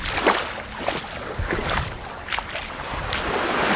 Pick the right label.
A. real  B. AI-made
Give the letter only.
A